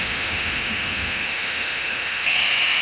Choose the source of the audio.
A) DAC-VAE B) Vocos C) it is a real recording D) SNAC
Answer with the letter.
A